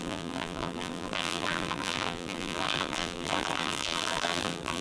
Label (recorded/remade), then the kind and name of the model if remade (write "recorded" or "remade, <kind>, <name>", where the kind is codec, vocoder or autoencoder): remade, vocoder, BigVGAN v2